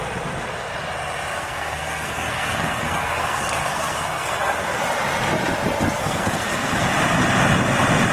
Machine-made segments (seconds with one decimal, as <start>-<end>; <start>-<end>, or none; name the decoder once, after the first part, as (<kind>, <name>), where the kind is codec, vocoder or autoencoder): 1.3-4.8 (codec, SNAC); 6.0-6.9